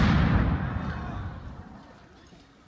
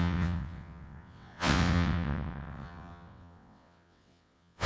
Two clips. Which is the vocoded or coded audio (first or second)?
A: second